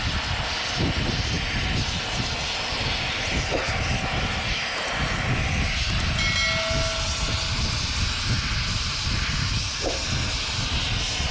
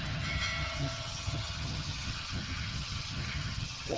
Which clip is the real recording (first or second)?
first